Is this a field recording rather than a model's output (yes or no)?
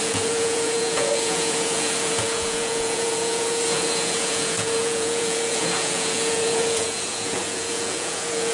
no